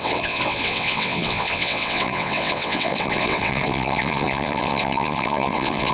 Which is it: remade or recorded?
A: remade